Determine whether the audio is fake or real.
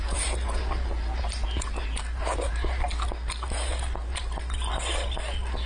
real